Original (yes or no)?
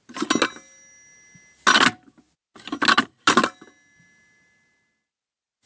yes